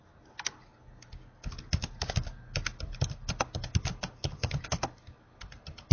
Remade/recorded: recorded